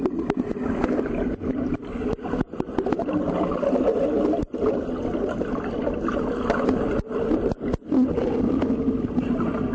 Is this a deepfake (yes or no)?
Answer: no